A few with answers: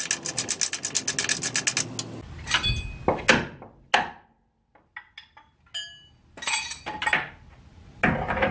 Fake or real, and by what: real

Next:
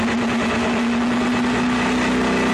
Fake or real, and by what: real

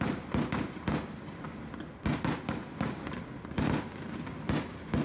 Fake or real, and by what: real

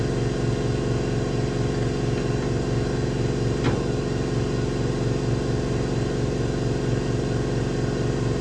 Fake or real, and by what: real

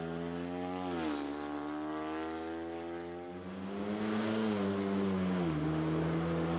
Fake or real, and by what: real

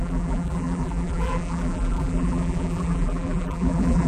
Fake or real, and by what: fake, vocoder, BigVGAN v2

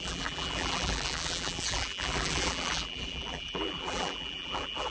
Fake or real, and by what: fake, vocoder, BigVGAN v2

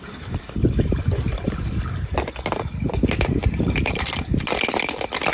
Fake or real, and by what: real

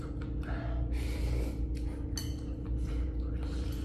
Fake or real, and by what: real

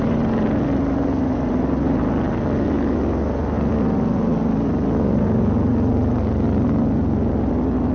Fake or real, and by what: real